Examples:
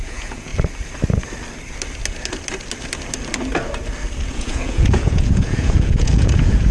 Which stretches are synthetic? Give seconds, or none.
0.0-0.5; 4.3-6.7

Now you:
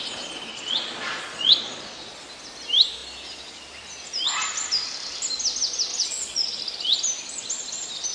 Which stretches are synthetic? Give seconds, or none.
0.5-2.1; 5.9-6.6